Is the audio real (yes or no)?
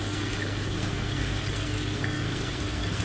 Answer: no